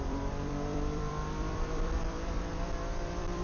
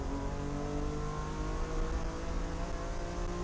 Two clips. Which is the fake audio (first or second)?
first